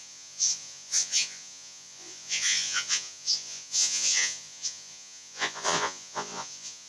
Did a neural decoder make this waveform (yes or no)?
yes